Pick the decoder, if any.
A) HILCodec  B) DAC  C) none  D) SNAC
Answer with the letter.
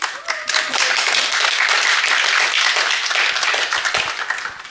C